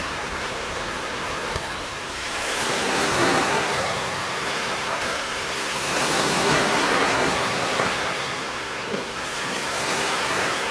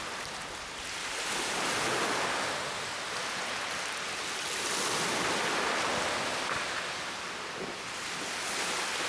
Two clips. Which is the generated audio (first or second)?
first